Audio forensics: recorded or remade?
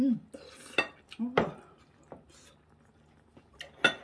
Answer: recorded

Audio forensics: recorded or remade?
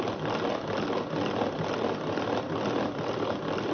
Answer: recorded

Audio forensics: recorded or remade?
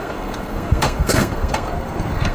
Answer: remade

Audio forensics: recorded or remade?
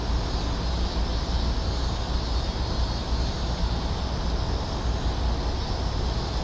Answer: recorded